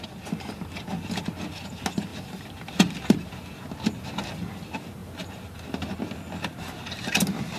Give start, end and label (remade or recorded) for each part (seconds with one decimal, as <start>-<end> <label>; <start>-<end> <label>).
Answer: 0.0-2.1 recorded; 2.1-3.3 remade; 3.3-7.6 recorded